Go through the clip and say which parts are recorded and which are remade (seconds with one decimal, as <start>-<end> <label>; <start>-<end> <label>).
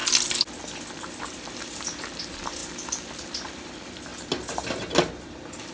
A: 0.0-0.9 recorded; 0.9-4.1 remade; 4.1-5.7 recorded